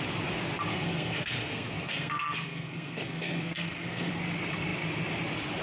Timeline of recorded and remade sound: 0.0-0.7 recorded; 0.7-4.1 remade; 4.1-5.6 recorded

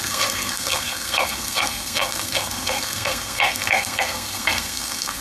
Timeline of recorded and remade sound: 0.0-5.2 remade

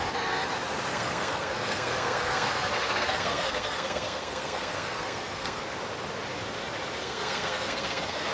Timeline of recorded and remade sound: 0.0-0.9 recorded; 0.9-5.6 remade; 5.6-7.0 recorded; 7.0-8.3 remade

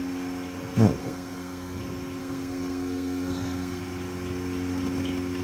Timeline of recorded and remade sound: 0.0-1.0 recorded; 1.0-1.8 remade; 1.8-2.2 recorded; 2.2-3.8 remade; 3.8-5.4 recorded

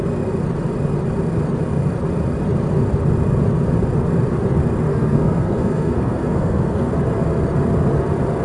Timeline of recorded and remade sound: 0.0-4.9 recorded; 4.9-6.9 remade; 6.9-8.4 recorded